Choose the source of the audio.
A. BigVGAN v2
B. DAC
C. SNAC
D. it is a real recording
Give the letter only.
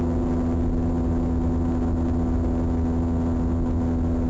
D